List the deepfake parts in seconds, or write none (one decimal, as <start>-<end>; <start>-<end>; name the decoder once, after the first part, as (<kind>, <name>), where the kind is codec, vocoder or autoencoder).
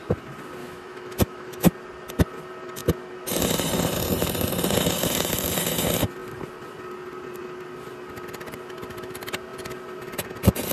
0.6-1.7 (autoencoder, DAC-VAE)